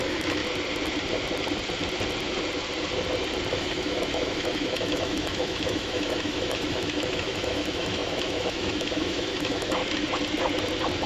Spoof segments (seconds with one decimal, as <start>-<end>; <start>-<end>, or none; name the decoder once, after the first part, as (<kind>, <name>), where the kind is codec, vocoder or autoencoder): 0.0-0.4 (autoencoder, DAC-VAE); 3.5-9.8